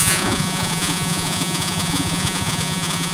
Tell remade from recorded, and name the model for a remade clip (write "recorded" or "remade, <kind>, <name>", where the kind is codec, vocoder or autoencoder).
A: remade, vocoder, Vocos